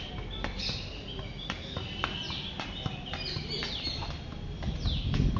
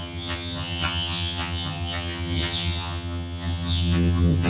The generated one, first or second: second